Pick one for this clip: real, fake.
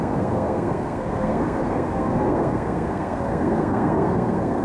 fake